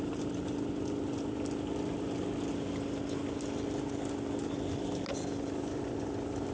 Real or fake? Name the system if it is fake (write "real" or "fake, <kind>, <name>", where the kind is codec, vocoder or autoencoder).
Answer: real